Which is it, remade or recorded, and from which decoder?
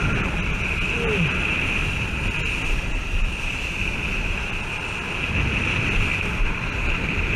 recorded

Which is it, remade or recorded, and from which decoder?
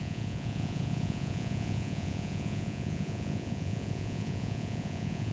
remade, vocoder, Vocos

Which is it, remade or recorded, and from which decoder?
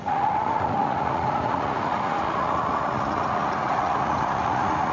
remade, vocoder, Vocos